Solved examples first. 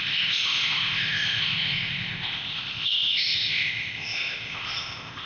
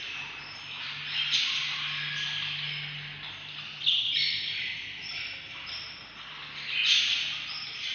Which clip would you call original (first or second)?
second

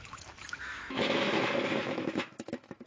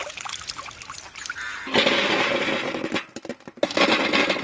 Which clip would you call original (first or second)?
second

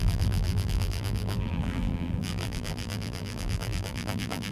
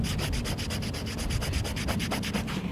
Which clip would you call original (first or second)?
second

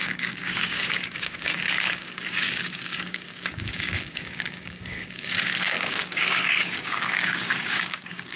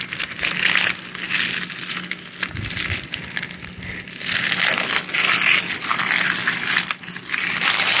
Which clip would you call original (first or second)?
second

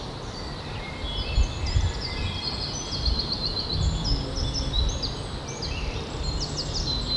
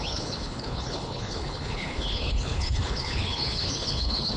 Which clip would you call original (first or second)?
first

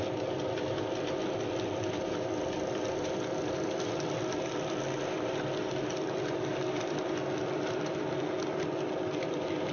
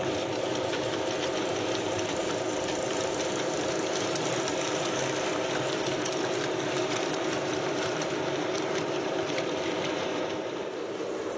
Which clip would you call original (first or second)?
first